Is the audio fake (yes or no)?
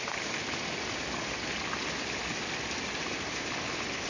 no